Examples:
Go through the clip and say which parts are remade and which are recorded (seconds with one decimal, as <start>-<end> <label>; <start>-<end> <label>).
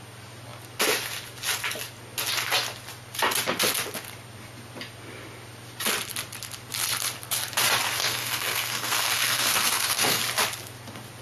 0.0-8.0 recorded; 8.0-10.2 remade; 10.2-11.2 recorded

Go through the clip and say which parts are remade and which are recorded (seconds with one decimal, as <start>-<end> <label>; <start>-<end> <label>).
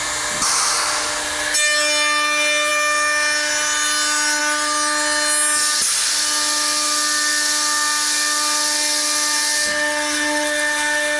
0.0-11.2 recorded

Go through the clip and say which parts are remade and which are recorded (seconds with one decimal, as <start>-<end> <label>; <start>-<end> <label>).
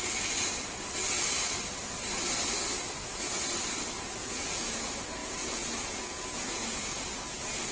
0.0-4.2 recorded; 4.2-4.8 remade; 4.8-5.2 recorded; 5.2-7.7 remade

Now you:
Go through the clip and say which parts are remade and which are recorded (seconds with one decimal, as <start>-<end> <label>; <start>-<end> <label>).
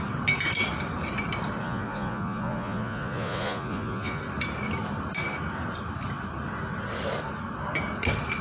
0.0-1.6 recorded; 1.6-4.2 remade; 4.2-8.4 recorded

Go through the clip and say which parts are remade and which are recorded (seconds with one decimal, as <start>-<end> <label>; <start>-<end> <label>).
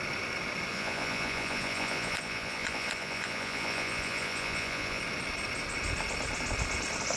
0.0-0.7 recorded; 0.7-5.0 remade; 5.0-7.2 recorded